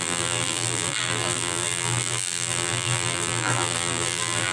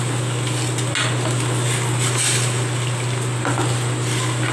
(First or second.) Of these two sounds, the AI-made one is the first